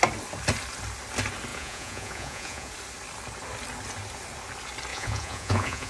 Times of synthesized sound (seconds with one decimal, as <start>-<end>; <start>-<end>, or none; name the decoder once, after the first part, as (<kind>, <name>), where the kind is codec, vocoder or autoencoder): 1.5-2.7 (vocoder, Vocos); 4.9-5.9